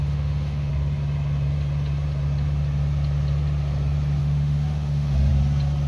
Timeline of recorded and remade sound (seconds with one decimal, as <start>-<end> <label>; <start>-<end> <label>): 0.0-0.7 remade; 0.7-4.2 recorded; 4.2-5.3 remade; 5.3-5.9 recorded